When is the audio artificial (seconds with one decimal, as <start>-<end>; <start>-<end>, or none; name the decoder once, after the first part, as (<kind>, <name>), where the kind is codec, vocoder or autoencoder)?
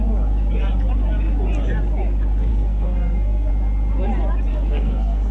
2.5-3.5 (codec, SNAC); 4.5-5.3